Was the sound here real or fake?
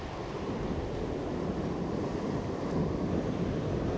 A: real